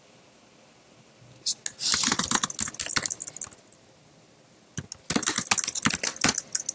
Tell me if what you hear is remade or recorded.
recorded